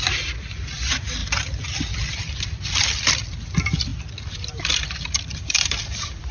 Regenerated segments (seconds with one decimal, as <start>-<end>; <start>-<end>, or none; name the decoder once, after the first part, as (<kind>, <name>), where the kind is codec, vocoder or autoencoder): 0.0-1.2 (vocoder, BigVGAN v2); 2.8-6.3